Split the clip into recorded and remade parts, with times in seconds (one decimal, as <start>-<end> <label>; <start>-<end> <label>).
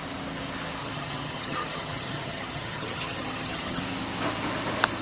0.0-0.8 recorded; 0.8-3.8 remade; 3.8-5.0 recorded